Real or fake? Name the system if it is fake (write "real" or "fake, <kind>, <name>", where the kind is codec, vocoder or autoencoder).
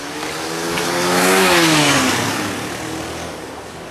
fake, codec, DAC